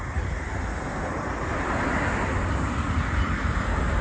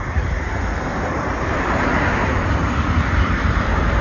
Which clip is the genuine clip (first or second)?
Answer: first